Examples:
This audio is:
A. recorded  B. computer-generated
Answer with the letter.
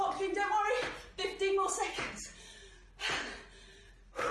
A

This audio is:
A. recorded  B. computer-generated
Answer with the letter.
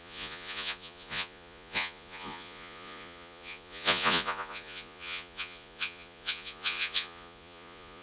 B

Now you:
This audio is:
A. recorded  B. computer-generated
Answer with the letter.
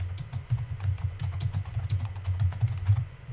B